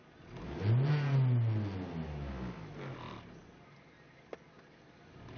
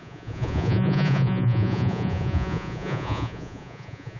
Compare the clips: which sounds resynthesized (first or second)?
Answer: second